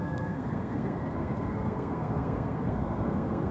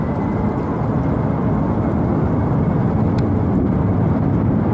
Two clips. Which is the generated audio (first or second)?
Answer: first